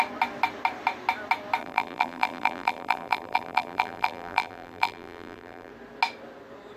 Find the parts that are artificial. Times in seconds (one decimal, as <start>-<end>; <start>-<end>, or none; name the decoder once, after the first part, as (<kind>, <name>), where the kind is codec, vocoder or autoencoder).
1.6-5.7 (vocoder, BigVGAN v2)